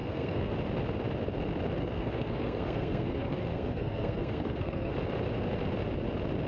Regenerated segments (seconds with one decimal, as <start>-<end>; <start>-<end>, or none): 0.0-0.5; 1.8-4.9